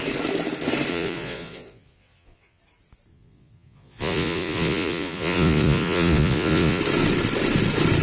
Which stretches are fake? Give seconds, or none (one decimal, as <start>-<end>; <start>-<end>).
0.9-2.6; 3.1-6.8